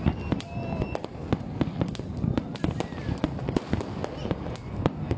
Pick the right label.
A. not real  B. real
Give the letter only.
B